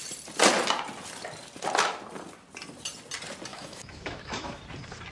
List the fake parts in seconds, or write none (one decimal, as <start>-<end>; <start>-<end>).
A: 3.5-4.6